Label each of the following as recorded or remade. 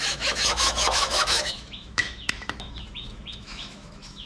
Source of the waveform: remade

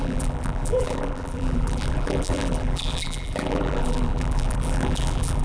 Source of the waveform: remade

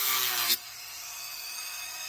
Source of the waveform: remade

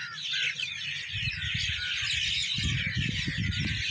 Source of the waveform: recorded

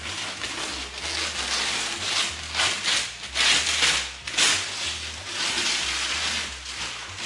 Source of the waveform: recorded